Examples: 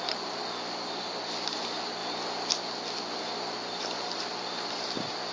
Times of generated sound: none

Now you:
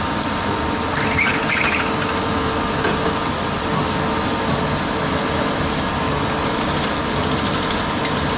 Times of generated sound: none

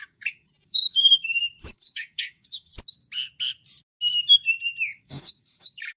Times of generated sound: 0.0-2.7 (codec, DAC); 5.0-6.0

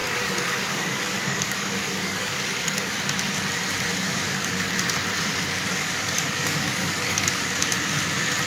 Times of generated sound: 0.0-2.9 (codec, DAC); 3.9-4.7; 5.8-7.6

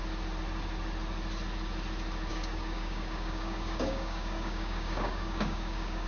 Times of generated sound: 2.3-6.1 (codec, DAC)